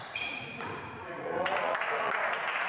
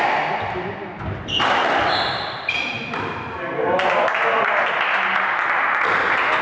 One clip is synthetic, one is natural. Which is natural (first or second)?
second